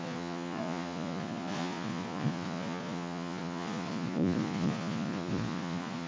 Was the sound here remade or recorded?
remade